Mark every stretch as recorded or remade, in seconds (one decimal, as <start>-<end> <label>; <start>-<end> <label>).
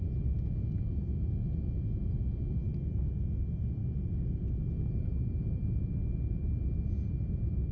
0.0-7.7 recorded